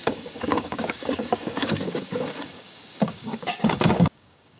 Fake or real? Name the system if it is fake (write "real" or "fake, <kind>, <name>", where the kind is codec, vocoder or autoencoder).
fake, codec, DAC